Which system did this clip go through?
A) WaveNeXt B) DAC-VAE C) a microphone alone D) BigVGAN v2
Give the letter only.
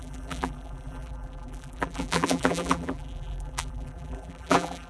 D